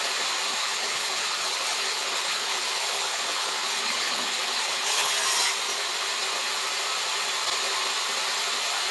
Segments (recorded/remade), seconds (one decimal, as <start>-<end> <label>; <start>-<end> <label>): 0.0-0.6 recorded; 0.6-5.1 remade; 5.1-8.9 recorded